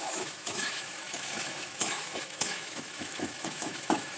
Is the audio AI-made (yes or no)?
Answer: yes